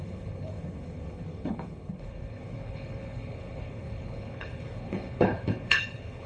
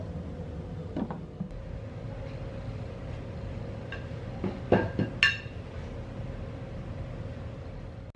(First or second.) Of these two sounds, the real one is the second